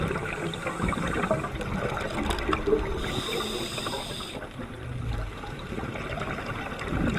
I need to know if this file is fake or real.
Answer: real